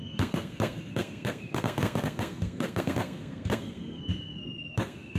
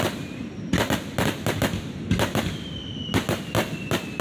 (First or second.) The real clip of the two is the second